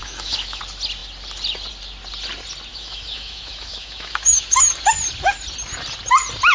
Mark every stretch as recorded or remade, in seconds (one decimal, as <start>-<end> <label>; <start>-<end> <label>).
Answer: 0.0-0.6 remade; 0.6-2.7 recorded; 2.7-4.7 remade; 4.7-6.5 recorded